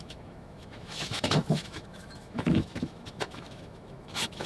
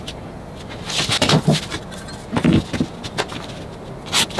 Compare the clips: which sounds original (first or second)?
second